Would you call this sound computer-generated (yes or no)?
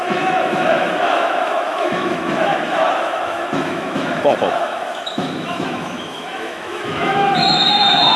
yes